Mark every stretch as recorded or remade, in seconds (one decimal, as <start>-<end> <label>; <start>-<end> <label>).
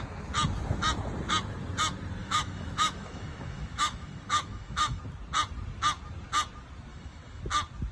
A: 0.0-2.2 recorded; 2.2-5.0 remade; 5.0-6.9 recorded; 6.9-7.4 remade; 7.4-7.9 recorded